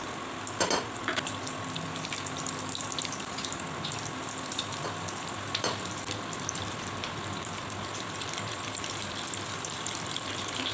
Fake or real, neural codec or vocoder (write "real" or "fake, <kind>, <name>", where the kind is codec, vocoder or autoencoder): real